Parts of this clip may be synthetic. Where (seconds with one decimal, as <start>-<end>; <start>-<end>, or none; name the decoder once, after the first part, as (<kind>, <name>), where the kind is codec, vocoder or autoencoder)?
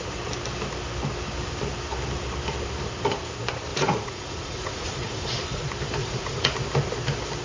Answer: 3.7-5.6 (vocoder, Vocos); 6.0-6.5